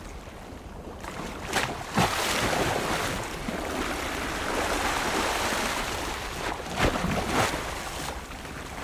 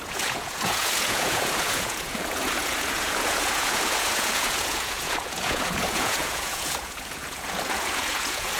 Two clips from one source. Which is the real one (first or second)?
first